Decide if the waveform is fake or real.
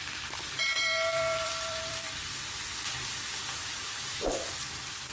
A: fake